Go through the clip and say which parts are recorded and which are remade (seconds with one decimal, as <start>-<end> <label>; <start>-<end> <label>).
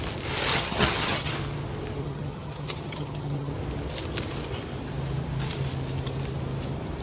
0.0-0.5 recorded; 0.5-1.3 remade; 1.3-2.0 recorded; 2.0-3.5 remade; 3.5-7.0 recorded